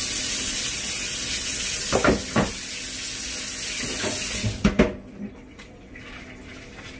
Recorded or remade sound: recorded